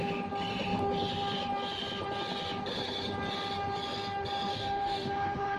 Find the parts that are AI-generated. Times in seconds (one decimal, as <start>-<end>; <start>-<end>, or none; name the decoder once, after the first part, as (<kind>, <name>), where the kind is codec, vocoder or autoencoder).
4.5-5.6 (autoencoder, DAC-VAE)